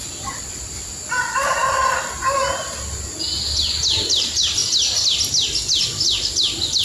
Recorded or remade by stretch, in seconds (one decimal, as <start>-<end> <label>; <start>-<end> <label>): 0.0-6.8 recorded